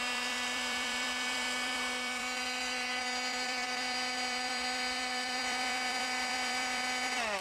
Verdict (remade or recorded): remade